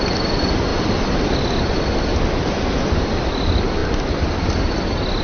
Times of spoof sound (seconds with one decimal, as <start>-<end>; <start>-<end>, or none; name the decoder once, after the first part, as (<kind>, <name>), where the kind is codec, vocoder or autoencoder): 0.0-0.7 (vocoder, BigVGAN v2); 2.9-3.8